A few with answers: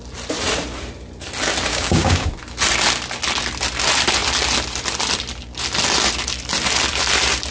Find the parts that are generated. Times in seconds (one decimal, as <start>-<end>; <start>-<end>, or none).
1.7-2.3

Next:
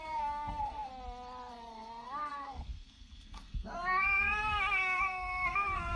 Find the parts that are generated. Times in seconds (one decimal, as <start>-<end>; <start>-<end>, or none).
0.0-0.9; 1.5-6.0

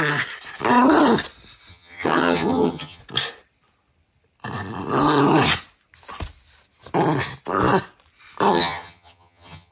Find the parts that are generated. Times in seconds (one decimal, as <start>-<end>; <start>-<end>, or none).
1.7-3.0; 8.5-9.7